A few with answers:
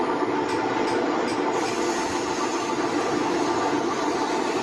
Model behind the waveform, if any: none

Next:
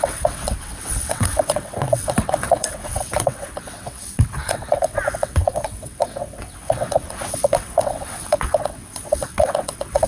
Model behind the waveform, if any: vocoder, WaveNeXt